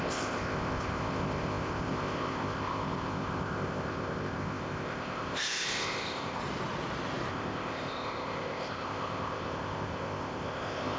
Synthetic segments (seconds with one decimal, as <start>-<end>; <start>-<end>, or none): 0.0-6.4; 7.3-11.0